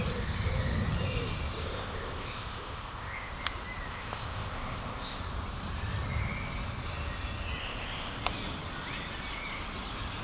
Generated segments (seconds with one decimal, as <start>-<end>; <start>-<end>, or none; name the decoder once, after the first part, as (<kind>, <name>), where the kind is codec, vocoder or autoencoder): 1.6-3.3 (codec, ZipCodec); 3.9-5.2; 7.6-8.2